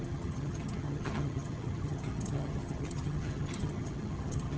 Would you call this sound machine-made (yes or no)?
yes